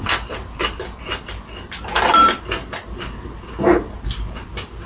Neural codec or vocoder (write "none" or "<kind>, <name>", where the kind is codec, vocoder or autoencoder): none